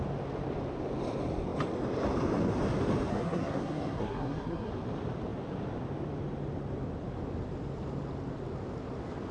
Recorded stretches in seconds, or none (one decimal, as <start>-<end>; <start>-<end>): 0.0-3.1; 4.7-9.3